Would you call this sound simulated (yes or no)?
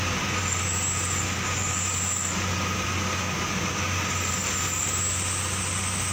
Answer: no